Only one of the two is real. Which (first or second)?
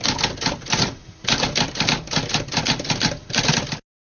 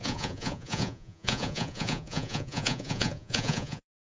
first